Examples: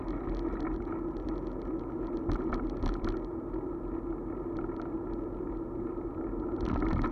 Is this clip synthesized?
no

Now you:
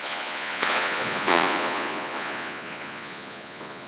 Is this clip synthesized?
yes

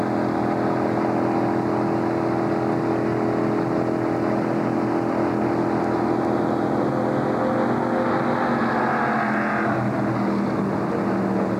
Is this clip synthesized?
no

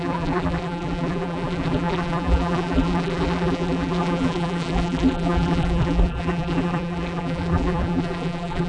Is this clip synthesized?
yes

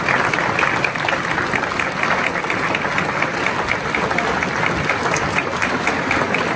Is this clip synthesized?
no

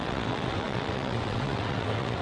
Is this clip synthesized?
yes